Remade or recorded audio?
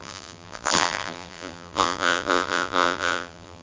remade